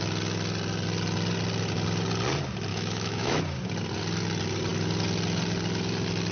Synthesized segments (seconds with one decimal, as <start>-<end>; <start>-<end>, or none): 2.7-3.4